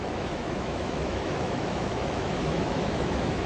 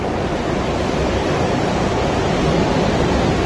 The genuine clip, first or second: second